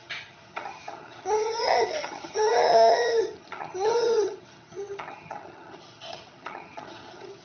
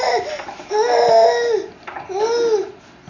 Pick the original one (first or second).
second